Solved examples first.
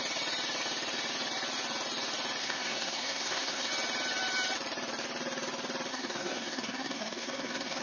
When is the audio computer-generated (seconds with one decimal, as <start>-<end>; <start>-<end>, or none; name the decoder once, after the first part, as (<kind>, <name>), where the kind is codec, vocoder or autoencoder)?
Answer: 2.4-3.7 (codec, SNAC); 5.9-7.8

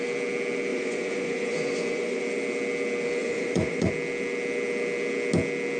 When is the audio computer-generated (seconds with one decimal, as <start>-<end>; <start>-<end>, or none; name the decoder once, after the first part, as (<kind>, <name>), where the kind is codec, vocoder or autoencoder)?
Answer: 0.7-2.2 (vocoder, Vocos); 3.2-3.9

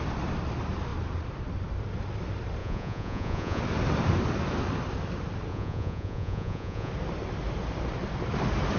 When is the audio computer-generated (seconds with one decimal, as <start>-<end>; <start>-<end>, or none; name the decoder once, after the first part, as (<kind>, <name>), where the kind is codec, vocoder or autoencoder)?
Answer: 2.6-3.6 (vocoder, Vocos); 5.5-6.9

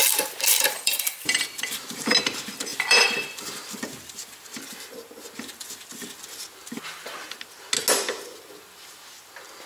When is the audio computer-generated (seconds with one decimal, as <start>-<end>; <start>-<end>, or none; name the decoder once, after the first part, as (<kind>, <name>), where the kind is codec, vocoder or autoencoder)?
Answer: 0.0-1.9 (vocoder, BigVGAN v2); 2.7-4.7

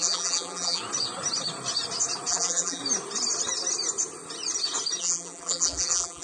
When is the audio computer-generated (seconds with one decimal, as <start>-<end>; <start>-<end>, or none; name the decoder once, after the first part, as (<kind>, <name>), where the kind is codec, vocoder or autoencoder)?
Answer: 0.0-0.8 (vocoder, BigVGAN v2); 2.3-2.8; 5.0-6.2

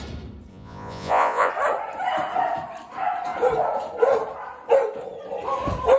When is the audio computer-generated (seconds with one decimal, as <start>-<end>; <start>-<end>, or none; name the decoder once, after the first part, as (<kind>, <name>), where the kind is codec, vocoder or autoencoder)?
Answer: 0.5-1.5 (vocoder, Vocos)

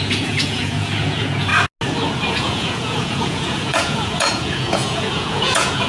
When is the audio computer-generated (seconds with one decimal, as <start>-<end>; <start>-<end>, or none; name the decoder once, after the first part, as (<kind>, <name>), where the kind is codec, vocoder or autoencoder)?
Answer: 0.0-1.5 (vocoder, Vocos); 2.3-5.9